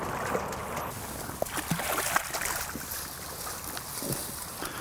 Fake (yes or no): no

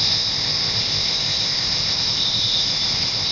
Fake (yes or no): yes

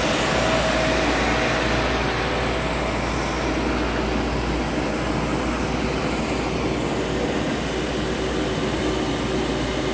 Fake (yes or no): no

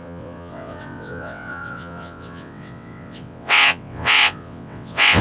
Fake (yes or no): yes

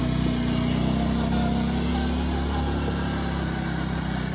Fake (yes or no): no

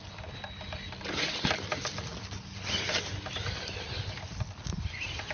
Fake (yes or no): no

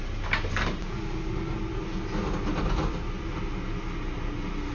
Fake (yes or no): no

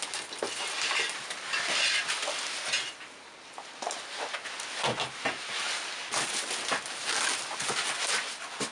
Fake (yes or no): no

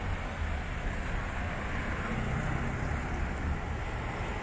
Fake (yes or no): no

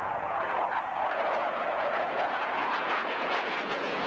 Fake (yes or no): yes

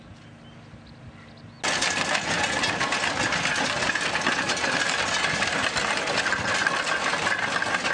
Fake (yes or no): no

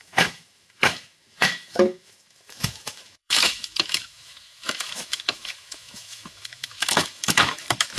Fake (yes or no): yes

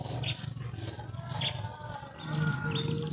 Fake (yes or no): no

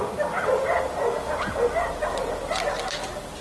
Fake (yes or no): no